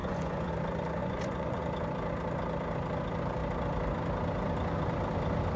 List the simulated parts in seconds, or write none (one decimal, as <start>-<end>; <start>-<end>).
0.0-0.5; 1.0-1.6